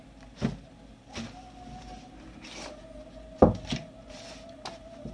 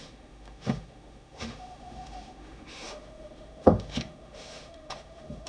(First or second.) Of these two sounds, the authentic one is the first